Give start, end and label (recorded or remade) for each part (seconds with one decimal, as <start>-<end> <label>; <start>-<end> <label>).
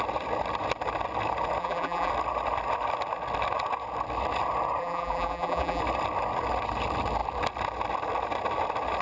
0.0-1.6 recorded; 1.6-2.1 remade; 2.1-4.8 recorded; 4.8-5.8 remade; 5.8-9.0 recorded